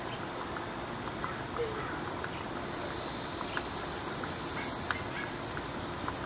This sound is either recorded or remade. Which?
remade